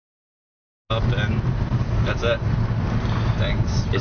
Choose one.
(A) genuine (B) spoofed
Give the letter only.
A